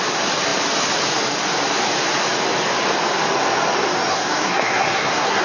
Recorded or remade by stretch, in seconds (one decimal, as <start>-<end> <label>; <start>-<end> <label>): 0.0-4.1 recorded; 4.1-5.4 remade